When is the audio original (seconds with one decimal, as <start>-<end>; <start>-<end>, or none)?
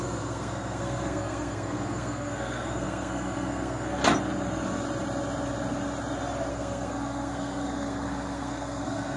4.0-6.5